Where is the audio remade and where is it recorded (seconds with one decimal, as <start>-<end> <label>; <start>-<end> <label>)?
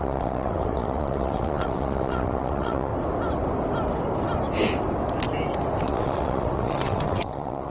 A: 0.0-2.9 remade; 2.9-5.8 recorded; 5.8-7.7 remade